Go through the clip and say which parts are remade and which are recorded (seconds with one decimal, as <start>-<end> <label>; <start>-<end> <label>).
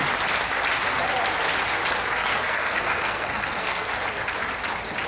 0.0-2.2 recorded; 2.2-3.9 remade; 3.9-5.1 recorded